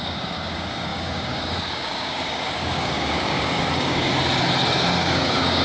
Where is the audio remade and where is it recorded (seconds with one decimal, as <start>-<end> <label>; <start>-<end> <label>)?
0.0-4.1 remade; 4.1-5.0 recorded; 5.0-5.6 remade